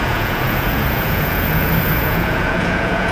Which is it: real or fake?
fake